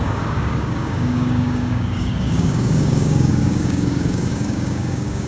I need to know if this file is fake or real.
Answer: fake